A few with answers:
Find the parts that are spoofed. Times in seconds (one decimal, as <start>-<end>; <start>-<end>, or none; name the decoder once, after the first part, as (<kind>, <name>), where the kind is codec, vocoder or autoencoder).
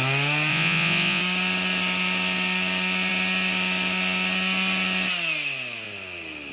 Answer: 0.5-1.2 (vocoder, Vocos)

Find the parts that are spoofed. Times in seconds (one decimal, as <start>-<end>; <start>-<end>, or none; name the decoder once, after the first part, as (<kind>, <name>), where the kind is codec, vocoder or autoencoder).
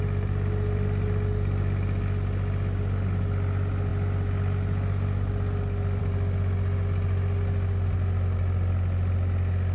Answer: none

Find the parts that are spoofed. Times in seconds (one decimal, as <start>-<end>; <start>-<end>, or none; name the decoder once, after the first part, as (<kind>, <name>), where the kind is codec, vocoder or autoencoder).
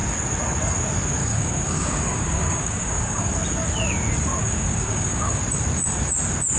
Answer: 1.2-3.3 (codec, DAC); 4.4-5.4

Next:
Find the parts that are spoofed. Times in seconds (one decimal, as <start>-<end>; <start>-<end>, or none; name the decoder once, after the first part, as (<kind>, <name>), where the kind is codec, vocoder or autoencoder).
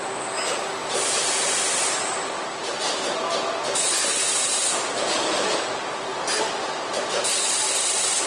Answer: 0.8-3.3 (vocoder, BigVGAN v2); 4.2-8.3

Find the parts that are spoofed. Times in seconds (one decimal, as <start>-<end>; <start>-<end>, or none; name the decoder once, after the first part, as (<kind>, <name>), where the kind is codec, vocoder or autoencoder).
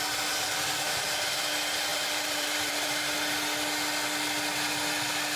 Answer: 1.9-3.0 (vocoder, BigVGAN v2)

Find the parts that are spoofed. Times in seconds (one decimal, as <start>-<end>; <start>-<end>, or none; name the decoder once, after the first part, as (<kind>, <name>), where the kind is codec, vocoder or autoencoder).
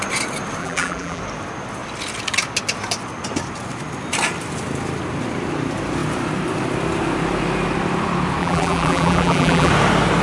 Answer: 0.6-1.2 (vocoder, BigVGAN v2); 8.4-9.7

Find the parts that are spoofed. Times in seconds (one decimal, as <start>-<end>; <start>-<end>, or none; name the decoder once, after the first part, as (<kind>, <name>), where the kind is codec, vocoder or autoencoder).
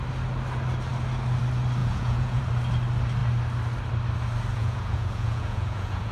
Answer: 1.8-2.4 (vocoder, Vocos); 4.5-6.1